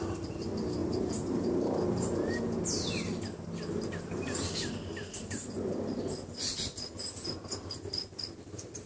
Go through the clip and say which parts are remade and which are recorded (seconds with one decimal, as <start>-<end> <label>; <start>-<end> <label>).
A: 0.0-0.8 recorded; 0.8-2.3 remade; 2.3-8.9 recorded